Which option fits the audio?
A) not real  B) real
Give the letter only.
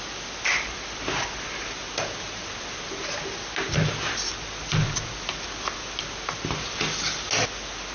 B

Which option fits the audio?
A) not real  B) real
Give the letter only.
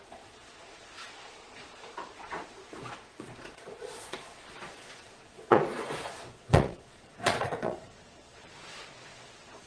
A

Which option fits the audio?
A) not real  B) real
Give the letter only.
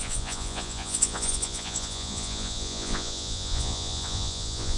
A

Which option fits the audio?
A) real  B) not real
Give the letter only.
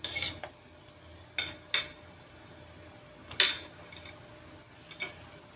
A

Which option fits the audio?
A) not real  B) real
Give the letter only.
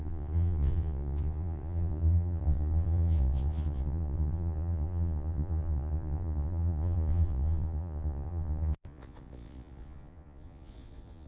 A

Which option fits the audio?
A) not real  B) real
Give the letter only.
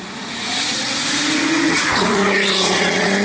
A